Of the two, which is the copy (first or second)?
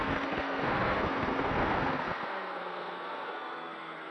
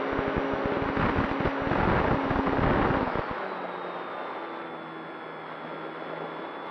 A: first